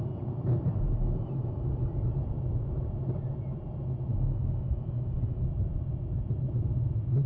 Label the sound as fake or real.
real